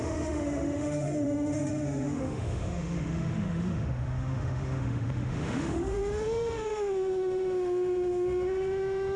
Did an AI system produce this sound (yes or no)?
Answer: yes